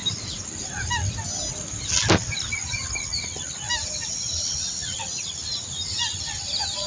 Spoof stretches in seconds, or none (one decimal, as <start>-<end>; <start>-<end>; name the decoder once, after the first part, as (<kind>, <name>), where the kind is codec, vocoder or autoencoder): none